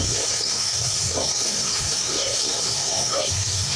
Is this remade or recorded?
remade